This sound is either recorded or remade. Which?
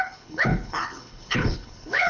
remade